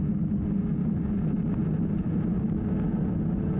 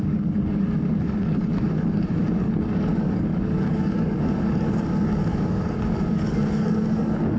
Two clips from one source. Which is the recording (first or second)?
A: first